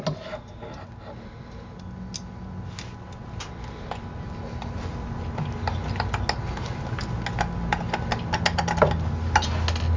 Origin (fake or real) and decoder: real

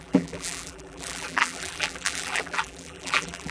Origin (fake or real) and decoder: fake, vocoder, BigVGAN v2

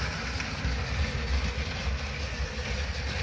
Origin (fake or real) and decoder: real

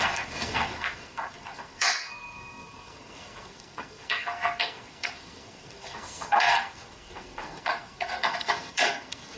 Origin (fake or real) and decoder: fake, codec, SNAC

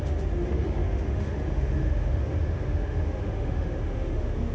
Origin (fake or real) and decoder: fake, autoencoder, DAC-VAE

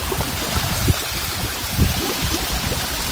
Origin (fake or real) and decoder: fake, vocoder, BigVGAN v2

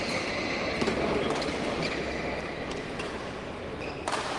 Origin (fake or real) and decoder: real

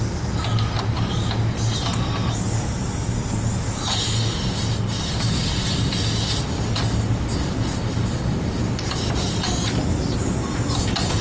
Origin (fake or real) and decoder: real